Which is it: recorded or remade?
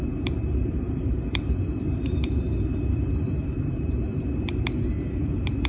remade